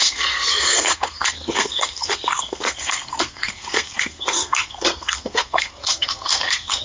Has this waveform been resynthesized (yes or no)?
yes